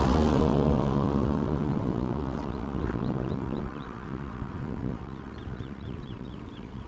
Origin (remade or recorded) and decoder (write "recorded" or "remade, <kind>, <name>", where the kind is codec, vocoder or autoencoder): remade, vocoder, WaveNeXt